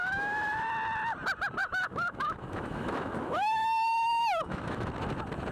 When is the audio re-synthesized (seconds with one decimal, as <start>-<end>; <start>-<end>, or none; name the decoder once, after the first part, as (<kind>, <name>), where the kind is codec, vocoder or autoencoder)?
0.0-0.7 (autoencoder, DAC-VAE); 1.6-4.9